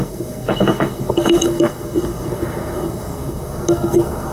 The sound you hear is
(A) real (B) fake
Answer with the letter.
B